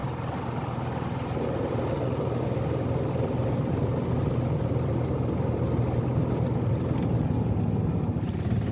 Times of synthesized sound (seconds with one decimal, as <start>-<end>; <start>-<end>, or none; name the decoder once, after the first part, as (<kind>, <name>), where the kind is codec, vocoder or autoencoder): none